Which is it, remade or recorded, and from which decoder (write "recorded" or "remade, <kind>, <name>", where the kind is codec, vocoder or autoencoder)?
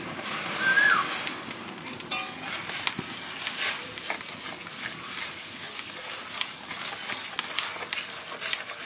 recorded